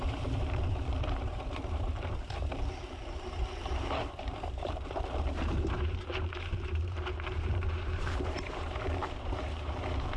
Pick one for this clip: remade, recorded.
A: remade